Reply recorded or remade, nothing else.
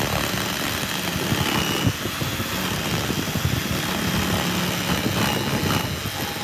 recorded